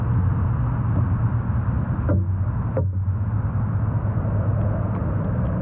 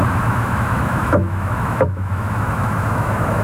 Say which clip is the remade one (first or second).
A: second